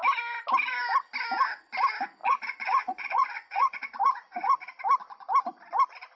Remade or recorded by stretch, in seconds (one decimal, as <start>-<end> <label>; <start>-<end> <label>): 0.0-2.2 recorded; 2.2-4.8 remade; 4.8-6.2 recorded